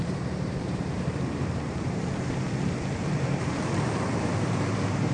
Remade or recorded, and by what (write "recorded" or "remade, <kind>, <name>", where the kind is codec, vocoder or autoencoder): remade, vocoder, BigVGAN v2